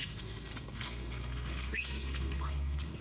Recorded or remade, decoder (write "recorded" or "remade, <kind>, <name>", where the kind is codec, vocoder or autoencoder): remade, codec, SNAC